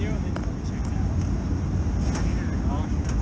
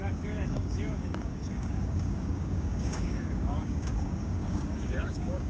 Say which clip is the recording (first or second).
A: first